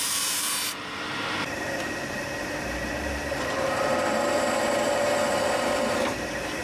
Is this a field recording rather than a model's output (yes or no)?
no